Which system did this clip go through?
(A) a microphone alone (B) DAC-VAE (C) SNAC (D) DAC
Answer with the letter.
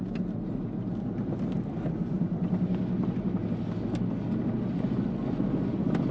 A